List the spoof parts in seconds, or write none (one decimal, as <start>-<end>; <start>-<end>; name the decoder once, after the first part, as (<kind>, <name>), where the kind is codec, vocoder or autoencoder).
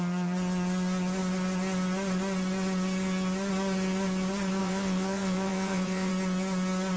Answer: 4.6-6.1 (vocoder, WaveNeXt)